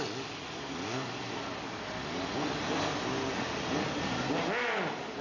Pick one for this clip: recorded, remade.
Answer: recorded